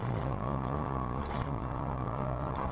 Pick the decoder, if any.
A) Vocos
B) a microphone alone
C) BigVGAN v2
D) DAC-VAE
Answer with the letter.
A